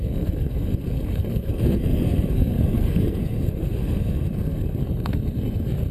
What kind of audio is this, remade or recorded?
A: remade